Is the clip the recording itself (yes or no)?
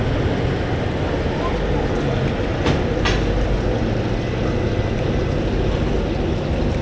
yes